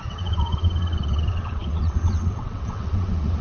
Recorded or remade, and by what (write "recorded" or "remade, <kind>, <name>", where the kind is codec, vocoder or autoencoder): remade, vocoder, WaveNeXt